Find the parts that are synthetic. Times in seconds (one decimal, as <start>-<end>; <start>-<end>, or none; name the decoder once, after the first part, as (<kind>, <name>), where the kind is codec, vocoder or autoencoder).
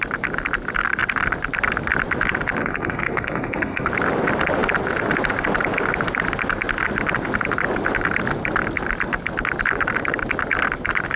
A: 2.6-3.9 (codec, SNAC)